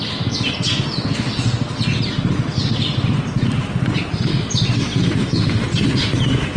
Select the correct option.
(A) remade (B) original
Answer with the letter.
B